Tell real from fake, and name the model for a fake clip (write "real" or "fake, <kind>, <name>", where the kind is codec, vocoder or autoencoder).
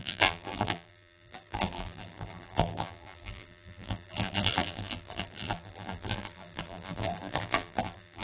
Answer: fake, vocoder, BigVGAN v2